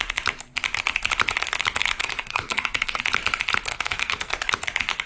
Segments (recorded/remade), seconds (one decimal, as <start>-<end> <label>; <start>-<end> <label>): 0.0-2.0 recorded; 2.0-3.0 remade; 3.0-3.7 recorded; 3.7-4.3 remade; 4.3-5.1 recorded